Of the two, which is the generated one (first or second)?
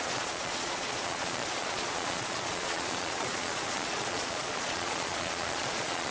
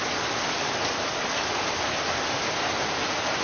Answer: first